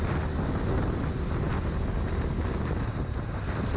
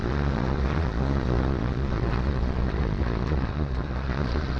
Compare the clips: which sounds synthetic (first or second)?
second